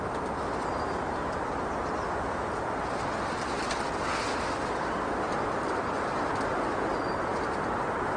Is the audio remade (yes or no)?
no